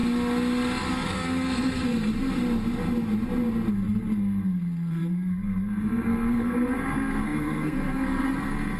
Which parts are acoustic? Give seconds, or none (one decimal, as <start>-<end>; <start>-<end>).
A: 0.0-0.9; 2.1-3.7

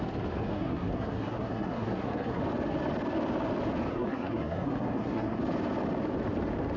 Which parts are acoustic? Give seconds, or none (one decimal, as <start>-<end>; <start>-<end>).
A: 0.0-0.5; 2.4-3.9; 5.4-6.8

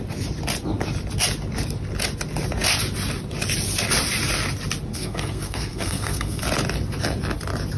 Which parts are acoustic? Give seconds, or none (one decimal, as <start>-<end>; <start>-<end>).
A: 0.0-4.9; 6.4-7.8

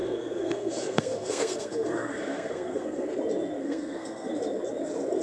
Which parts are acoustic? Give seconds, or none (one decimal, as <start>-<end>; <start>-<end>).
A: 3.1-3.6; 4.3-5.2

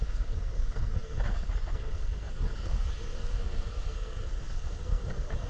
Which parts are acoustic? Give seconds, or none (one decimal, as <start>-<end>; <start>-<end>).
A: none

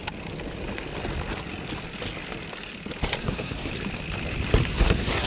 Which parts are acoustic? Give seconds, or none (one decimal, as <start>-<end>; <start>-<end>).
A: 0.0-3.2; 3.7-4.7